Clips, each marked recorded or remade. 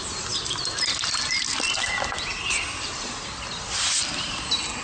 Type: recorded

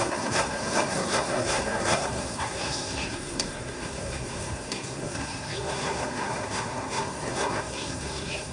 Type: remade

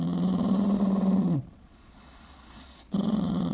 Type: remade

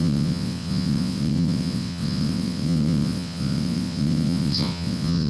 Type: remade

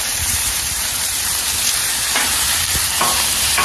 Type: remade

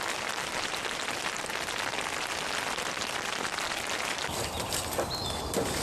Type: recorded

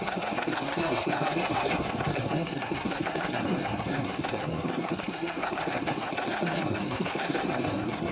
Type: remade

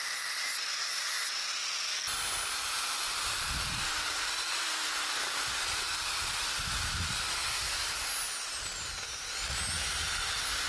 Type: recorded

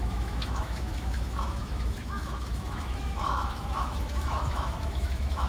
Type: remade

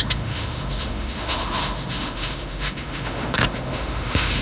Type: remade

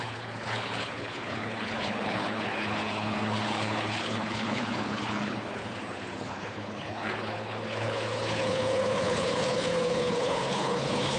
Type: remade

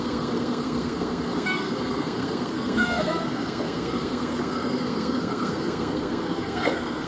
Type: remade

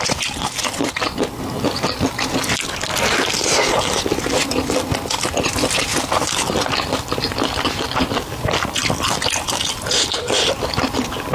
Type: recorded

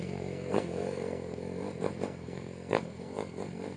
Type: remade